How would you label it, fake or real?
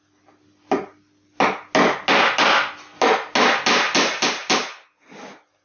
real